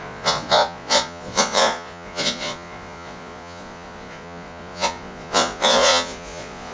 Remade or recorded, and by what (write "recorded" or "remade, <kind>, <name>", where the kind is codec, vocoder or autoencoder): remade, vocoder, Vocos